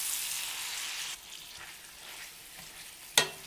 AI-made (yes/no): no